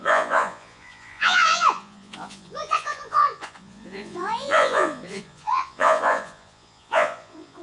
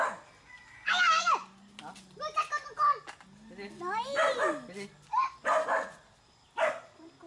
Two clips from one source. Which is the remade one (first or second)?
first